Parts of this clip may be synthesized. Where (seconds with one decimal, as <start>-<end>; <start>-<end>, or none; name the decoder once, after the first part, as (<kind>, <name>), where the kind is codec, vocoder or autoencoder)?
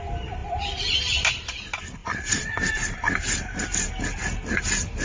0.4-1.3 (vocoder, BigVGAN v2); 2.0-3.9